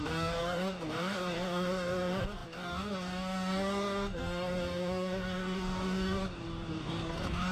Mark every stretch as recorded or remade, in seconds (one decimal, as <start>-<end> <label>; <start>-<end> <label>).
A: 0.0-7.5 remade